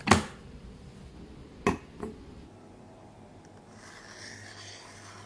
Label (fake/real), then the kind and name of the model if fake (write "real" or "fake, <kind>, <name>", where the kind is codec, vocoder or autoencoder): real